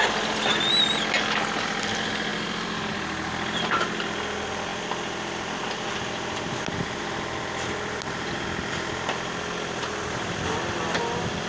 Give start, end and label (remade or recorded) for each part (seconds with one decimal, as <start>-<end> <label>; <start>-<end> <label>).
0.0-11.5 recorded